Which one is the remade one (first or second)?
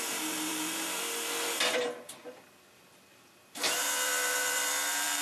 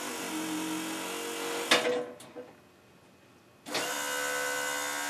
first